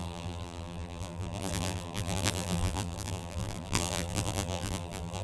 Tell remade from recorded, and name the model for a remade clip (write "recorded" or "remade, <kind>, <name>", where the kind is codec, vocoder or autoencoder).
remade, vocoder, BigVGAN v2